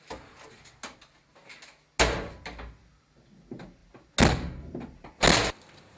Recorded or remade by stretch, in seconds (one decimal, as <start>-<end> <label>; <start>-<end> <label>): 0.0-6.0 recorded